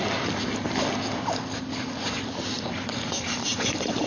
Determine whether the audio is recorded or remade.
recorded